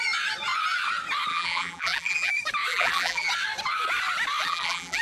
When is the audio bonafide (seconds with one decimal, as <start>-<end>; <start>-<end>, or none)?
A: 0.0-1.3; 2.3-2.7; 3.3-4.4